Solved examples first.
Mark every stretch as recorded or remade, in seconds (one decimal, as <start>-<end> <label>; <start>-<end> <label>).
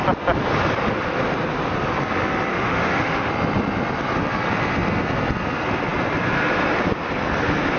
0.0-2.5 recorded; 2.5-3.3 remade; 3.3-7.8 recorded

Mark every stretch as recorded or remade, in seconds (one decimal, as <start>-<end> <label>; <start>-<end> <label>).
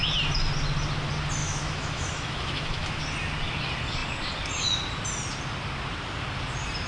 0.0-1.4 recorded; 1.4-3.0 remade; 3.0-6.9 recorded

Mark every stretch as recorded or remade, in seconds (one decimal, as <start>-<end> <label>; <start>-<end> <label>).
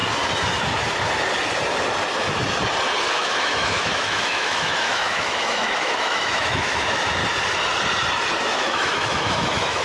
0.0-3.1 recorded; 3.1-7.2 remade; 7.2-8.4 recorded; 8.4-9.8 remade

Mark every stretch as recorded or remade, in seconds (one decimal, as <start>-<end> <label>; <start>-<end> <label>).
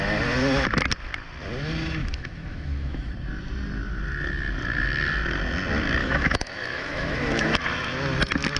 0.0-2.0 recorded; 2.0-3.1 remade; 3.1-6.0 recorded; 6.0-7.6 remade; 7.6-8.6 recorded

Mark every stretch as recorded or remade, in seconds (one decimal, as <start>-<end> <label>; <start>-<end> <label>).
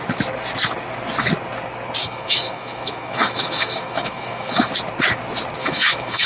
0.0-2.0 recorded; 2.0-4.7 remade; 4.7-5.6 recorded; 5.6-6.3 remade